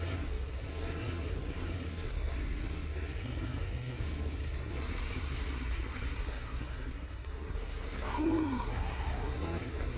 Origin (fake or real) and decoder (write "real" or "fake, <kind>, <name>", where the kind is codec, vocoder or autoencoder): fake, codec, SNAC